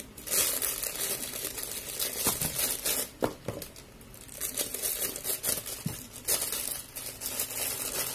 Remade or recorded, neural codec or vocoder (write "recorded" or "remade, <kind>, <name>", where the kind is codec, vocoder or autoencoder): recorded